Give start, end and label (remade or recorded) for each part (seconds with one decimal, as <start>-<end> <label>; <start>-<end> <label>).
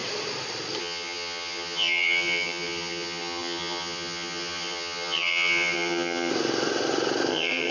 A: 0.0-0.8 recorded; 0.8-6.3 remade; 6.3-7.3 recorded; 7.3-7.7 remade